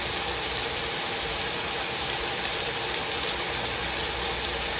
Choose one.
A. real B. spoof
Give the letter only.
A